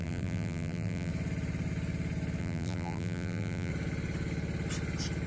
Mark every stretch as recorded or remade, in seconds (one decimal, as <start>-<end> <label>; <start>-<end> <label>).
0.0-1.1 remade; 1.1-2.4 recorded; 2.4-3.7 remade; 3.7-5.3 recorded